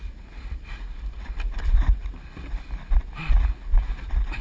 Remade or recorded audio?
recorded